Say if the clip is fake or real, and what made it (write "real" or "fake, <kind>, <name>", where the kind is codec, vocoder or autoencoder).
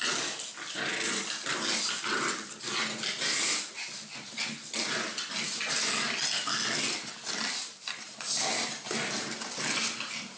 real